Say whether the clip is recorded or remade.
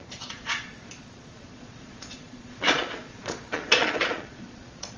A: remade